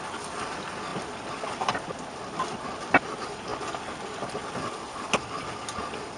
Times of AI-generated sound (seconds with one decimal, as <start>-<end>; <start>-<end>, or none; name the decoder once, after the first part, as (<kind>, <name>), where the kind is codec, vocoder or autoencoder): 0.9-1.5 (vocoder, BigVGAN v2)